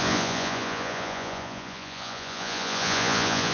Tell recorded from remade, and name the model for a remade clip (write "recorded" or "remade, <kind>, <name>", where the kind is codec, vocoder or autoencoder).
remade, vocoder, Vocos